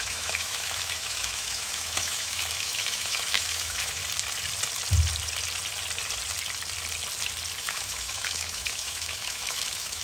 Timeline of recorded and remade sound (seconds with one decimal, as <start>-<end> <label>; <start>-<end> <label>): 0.0-4.0 remade; 4.0-7.6 recorded; 7.6-10.0 remade